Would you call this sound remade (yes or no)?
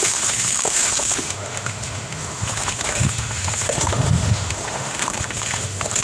yes